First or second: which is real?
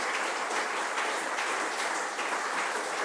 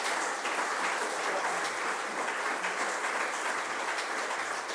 second